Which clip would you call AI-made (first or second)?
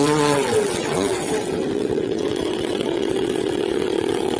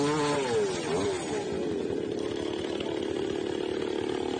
first